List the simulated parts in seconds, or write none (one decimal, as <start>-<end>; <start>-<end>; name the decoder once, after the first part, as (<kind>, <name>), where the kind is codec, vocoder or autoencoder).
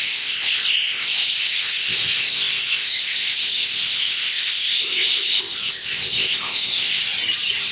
0.0-7.0 (codec, ZipCodec)